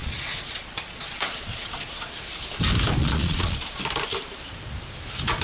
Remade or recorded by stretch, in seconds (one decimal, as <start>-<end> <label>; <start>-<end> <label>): 0.0-2.1 remade; 2.1-3.0 recorded; 3.0-3.8 remade; 3.8-5.4 recorded